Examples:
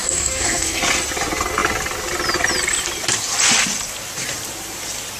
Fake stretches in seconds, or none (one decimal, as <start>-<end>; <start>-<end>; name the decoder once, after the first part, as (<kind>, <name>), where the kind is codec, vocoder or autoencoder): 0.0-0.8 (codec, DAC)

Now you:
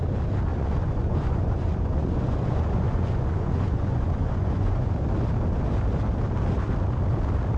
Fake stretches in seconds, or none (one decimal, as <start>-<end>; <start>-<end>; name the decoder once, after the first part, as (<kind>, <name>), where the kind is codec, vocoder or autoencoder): 0.5-4.9 (vocoder, Vocos)

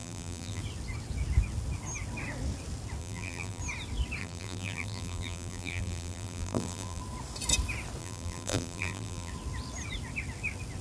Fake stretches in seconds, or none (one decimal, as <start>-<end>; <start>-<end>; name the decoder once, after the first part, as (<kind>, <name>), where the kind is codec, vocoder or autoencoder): 0.0-0.6 (vocoder, BigVGAN v2); 3.0-3.6; 4.2-7.0; 8.0-9.3

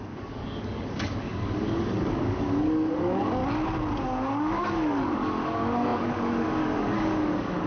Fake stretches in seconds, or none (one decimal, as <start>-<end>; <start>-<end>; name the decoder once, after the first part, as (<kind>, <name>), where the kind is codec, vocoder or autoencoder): 0.0-3.4 (codec, DAC); 4.0-7.7